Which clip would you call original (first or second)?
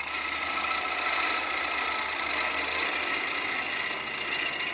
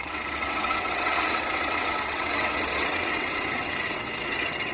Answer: first